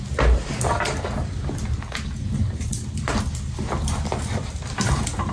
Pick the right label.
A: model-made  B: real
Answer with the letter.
B